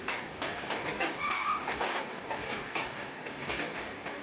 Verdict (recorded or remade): remade